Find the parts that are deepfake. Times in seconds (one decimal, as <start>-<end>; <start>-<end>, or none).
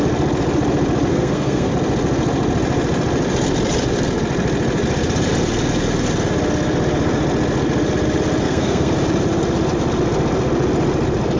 1.1-1.7; 8.4-8.9